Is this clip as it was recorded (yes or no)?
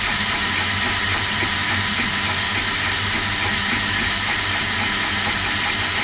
yes